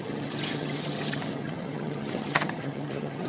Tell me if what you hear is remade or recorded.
remade